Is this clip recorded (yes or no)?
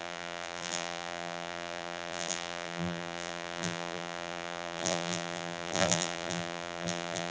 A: no